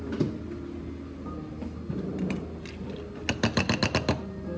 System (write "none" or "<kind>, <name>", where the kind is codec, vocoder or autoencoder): none